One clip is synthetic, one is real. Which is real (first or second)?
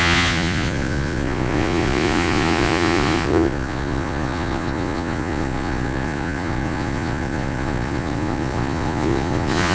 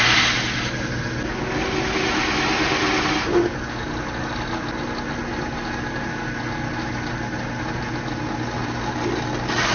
second